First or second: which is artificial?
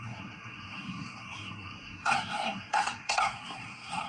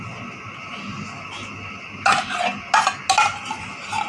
first